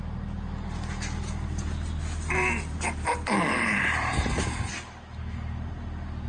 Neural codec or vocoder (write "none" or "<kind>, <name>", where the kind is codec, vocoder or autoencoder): none